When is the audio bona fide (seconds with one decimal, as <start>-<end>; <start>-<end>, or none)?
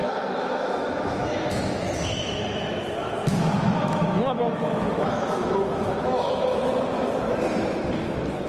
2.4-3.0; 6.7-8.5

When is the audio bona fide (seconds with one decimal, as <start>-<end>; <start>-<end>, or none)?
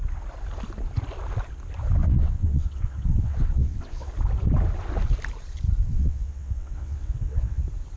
0.0-2.0; 4.1-5.9; 7.6-8.0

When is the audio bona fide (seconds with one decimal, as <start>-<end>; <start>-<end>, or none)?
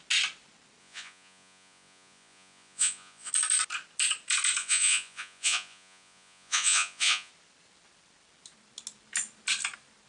0.0-0.8; 3.3-4.6; 7.3-10.1